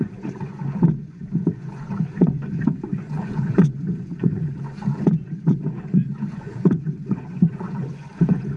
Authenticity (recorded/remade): remade